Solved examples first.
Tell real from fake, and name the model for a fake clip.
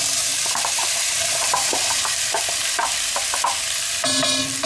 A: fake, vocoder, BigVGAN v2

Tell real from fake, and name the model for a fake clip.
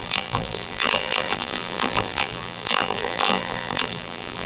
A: fake, vocoder, BigVGAN v2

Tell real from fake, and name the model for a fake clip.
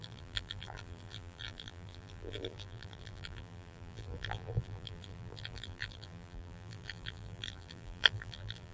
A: fake, vocoder, BigVGAN v2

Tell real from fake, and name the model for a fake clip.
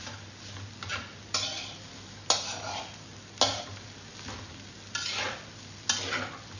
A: real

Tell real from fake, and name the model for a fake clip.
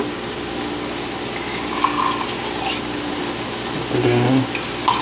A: real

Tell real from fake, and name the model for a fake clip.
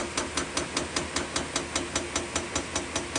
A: real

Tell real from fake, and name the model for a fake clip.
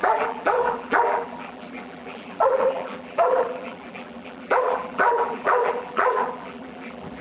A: fake, vocoder, BigVGAN v2